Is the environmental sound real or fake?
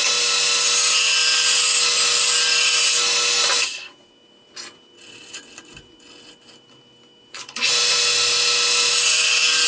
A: fake